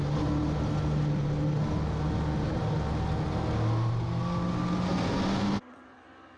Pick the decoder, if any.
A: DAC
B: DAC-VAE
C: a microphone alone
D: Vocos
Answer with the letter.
C